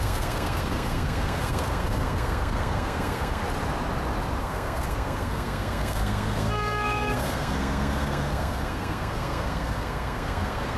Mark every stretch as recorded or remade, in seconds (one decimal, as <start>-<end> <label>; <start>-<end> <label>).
0.0-3.4 remade; 3.4-4.4 recorded; 4.4-10.8 remade